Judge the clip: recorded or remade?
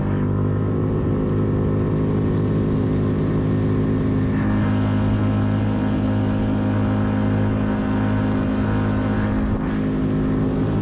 recorded